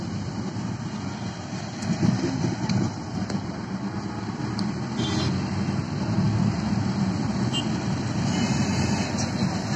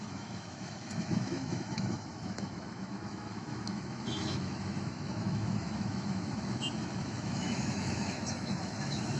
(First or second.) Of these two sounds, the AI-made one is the second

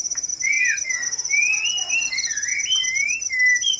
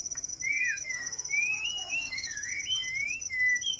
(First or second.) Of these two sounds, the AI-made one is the second